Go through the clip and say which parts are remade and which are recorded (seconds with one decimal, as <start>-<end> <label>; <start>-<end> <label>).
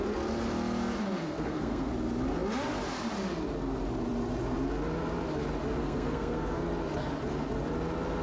0.0-1.2 recorded; 1.2-1.9 remade; 1.9-5.8 recorded; 5.8-6.6 remade; 6.6-8.2 recorded